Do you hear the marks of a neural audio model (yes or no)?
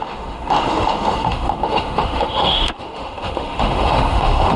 yes